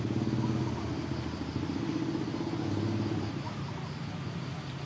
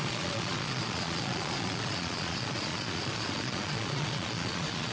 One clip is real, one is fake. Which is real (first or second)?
first